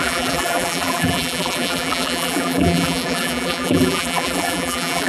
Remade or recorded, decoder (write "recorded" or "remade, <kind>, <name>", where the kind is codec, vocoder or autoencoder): remade, vocoder, BigVGAN v2